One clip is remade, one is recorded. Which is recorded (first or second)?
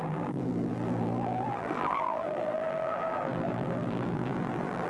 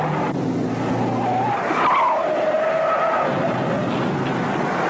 second